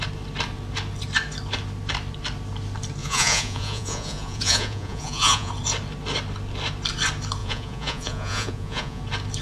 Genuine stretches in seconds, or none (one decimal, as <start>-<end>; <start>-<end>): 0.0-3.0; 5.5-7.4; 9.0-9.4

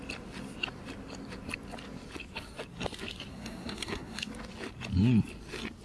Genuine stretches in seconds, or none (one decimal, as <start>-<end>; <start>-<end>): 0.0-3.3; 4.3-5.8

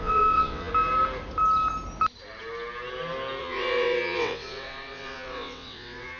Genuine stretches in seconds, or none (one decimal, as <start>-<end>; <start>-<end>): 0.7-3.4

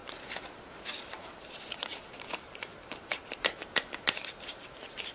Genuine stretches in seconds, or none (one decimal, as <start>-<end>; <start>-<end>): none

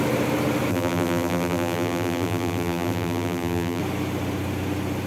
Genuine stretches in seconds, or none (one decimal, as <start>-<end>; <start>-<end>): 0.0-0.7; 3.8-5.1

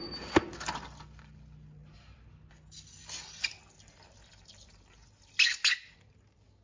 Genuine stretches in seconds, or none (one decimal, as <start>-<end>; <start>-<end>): 0.0-6.6